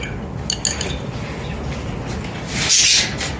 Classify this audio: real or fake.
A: real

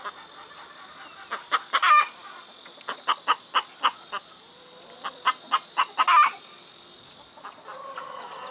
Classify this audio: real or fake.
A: real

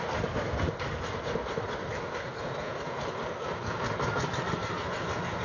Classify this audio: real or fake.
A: real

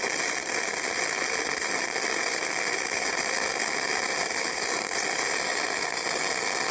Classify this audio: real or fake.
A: real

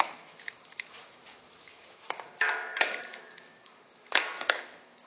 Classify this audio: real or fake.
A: fake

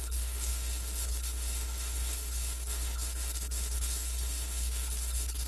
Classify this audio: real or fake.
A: fake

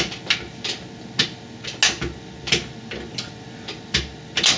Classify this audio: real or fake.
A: real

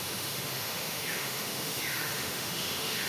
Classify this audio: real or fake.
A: fake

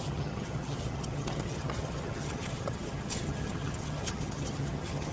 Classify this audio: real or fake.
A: fake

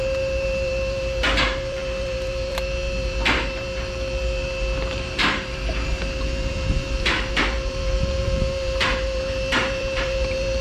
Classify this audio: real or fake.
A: fake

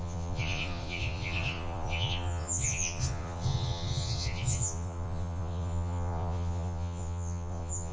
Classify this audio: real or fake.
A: fake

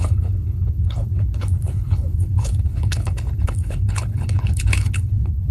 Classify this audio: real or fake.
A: fake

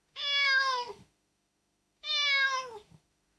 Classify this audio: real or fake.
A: fake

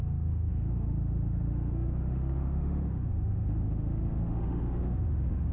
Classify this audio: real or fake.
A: fake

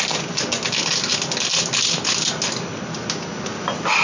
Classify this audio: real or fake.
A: real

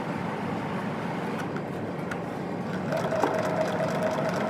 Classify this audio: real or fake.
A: real